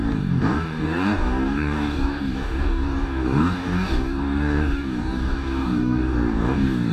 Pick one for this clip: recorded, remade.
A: remade